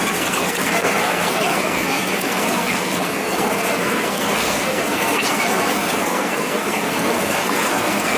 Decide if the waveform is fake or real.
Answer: fake